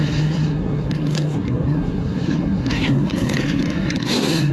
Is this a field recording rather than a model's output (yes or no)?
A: no